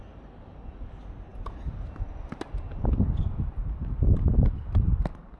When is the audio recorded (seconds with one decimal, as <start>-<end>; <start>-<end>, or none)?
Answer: 0.0-5.4